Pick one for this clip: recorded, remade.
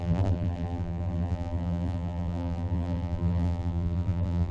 remade